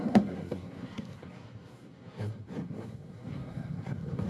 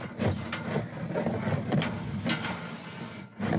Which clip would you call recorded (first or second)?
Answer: second